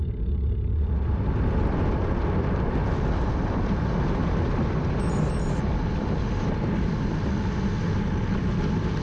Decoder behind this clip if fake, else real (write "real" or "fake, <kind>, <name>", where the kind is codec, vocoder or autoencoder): real